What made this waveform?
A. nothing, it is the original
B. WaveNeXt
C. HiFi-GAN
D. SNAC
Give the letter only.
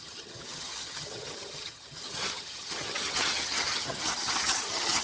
C